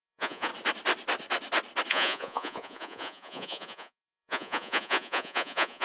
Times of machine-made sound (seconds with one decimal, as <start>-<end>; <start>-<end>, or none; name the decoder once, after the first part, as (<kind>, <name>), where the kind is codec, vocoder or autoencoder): 0.0-0.5 (vocoder, Vocos); 1.9-5.8